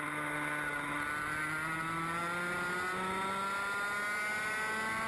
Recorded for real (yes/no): yes